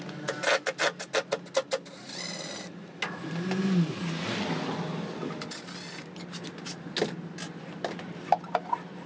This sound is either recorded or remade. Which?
recorded